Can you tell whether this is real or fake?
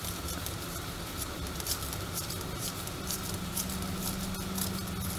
real